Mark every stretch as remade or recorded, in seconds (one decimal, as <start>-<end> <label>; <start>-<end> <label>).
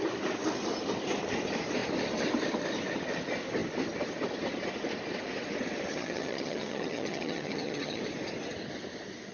0.0-5.9 recorded; 5.9-8.0 remade; 8.0-9.3 recorded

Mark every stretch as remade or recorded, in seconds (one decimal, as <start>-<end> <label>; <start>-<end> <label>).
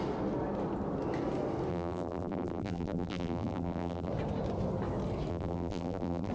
0.0-1.7 recorded; 1.7-4.1 remade; 4.1-5.3 recorded; 5.3-6.3 remade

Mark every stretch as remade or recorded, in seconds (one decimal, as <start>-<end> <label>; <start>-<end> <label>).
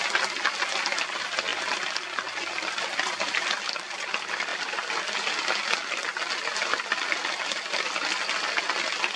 0.0-9.2 recorded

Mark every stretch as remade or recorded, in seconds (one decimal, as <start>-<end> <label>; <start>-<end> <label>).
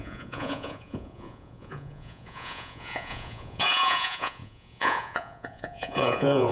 0.0-6.5 remade